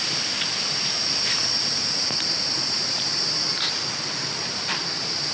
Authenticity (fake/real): real